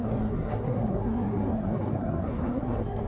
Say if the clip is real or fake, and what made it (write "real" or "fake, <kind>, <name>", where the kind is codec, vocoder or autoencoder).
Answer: fake, codec, SNAC